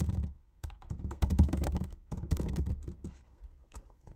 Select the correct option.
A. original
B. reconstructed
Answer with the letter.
B